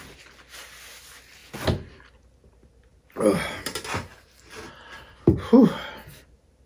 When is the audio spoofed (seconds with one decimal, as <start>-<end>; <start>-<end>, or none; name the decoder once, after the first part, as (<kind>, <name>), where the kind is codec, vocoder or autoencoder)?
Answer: none